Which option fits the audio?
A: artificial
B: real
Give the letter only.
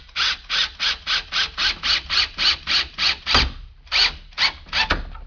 B